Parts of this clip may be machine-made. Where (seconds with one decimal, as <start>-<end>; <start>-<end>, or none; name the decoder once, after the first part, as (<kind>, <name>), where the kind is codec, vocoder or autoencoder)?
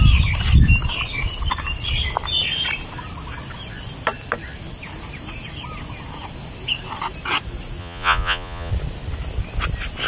7.8-8.7 (vocoder, Vocos)